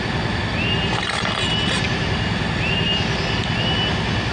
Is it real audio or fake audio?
real